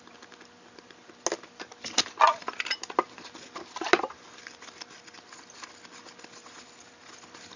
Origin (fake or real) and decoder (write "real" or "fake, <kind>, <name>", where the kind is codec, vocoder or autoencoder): real